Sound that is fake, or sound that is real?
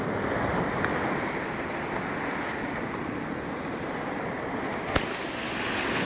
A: real